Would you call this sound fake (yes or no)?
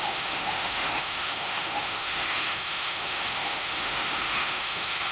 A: yes